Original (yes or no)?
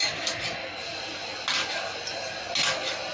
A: yes